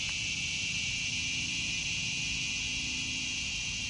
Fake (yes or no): no